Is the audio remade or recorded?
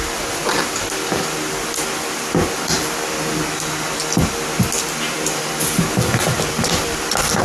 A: recorded